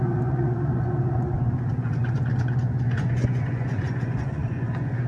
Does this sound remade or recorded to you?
remade